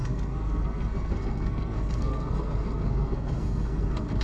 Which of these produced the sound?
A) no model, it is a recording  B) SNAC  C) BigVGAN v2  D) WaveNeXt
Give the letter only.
B